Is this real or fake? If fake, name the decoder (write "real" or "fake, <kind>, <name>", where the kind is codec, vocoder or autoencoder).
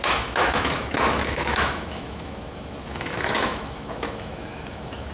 fake, autoencoder, DAC-VAE